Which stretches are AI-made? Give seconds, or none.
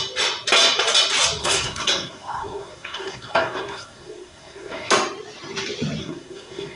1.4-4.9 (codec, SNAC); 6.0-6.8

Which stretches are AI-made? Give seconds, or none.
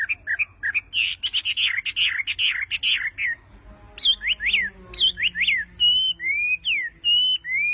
none